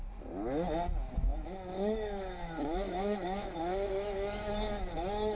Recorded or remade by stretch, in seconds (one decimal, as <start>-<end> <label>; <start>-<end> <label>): 0.0-1.3 recorded; 1.3-4.5 remade; 4.5-5.3 recorded